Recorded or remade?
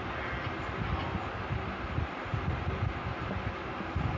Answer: recorded